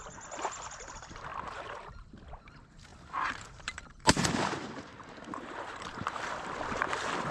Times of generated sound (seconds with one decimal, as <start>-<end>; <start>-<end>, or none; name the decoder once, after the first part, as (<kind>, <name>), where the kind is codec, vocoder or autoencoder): 1.3-1.9 (vocoder, BigVGAN v2); 2.9-6.3